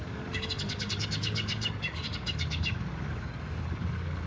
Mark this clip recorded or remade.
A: remade